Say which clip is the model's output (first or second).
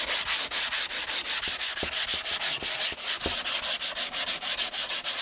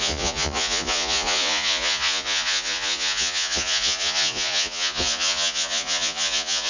second